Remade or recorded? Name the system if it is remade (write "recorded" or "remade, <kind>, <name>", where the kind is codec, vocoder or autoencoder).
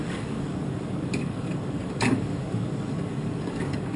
remade, codec, DAC